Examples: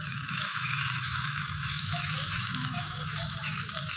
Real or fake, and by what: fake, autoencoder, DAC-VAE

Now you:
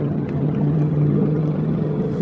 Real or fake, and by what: fake, vocoder, HiFi-GAN